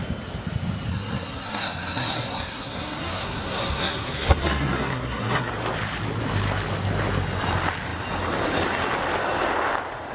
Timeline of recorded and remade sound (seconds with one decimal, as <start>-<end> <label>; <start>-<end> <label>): 0.0-0.9 recorded; 0.9-5.5 remade; 5.5-10.1 recorded